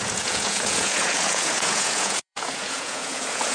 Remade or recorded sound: remade